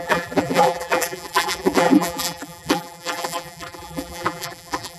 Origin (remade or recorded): remade